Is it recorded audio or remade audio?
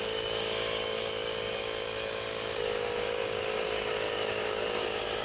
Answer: remade